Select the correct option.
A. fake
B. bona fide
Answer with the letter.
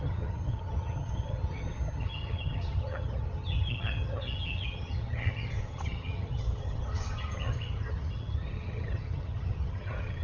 A